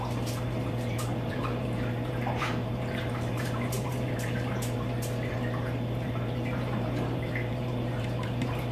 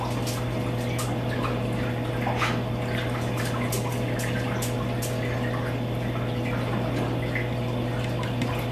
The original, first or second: second